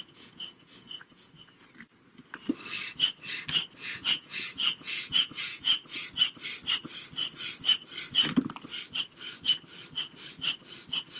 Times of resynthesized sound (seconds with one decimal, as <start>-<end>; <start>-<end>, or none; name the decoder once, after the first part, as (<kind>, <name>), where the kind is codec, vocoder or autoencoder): 0.0-1.6 (vocoder, Vocos); 3.8-5.8